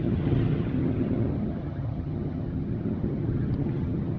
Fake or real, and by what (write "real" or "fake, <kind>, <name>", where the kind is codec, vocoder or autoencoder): fake, vocoder, HiFi-GAN